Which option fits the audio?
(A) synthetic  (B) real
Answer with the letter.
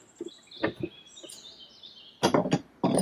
B